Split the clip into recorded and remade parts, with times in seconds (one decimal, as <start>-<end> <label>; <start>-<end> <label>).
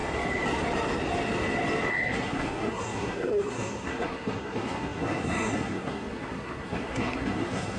0.0-1.9 recorded; 1.9-7.8 remade